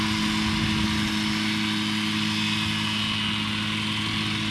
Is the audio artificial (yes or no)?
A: no